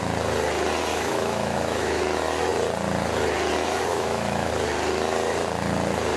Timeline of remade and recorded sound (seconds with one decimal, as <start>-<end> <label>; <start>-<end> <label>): 0.0-0.9 recorded; 0.9-2.0 remade; 2.0-3.9 recorded; 3.9-4.5 remade; 4.5-6.2 recorded